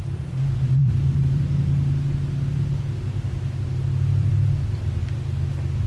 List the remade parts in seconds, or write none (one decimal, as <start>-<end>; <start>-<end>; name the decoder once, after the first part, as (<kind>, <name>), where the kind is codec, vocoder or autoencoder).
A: 0.8-4.3 (vocoder, BigVGAN v2); 5.0-5.9